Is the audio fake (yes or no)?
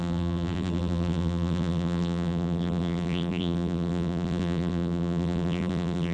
yes